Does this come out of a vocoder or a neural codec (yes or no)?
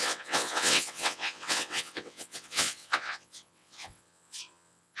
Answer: yes